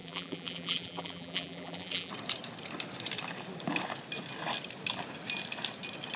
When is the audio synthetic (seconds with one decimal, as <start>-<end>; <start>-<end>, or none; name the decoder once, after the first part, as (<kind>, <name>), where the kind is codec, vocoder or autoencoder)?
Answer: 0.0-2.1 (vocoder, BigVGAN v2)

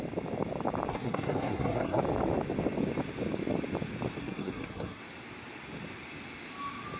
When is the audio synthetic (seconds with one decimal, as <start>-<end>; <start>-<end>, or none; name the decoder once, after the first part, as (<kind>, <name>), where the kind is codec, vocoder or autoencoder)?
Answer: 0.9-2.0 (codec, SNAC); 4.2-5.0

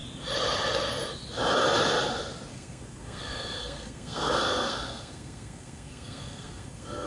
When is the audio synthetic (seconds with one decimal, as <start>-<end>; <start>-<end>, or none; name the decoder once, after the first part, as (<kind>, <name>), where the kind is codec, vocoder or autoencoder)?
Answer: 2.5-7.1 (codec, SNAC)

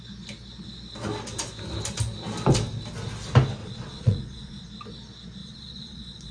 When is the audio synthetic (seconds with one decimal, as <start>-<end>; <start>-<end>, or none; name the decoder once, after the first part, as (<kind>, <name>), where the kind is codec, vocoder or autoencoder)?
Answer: 3.6-4.6 (vocoder, Vocos); 5.4-6.3